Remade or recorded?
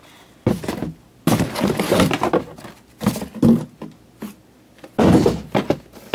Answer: recorded